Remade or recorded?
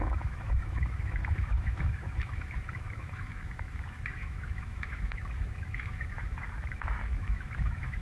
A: remade